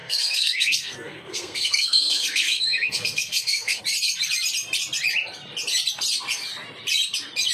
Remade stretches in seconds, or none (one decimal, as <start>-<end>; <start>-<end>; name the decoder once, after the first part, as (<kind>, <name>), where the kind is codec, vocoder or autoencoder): 0.0-3.8 (codec, SNAC)